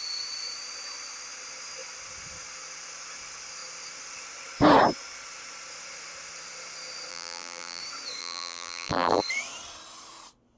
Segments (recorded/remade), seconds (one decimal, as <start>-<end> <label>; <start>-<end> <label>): 0.0-7.1 recorded; 7.1-7.8 remade; 7.8-8.2 recorded; 8.2-9.2 remade; 9.2-10.6 recorded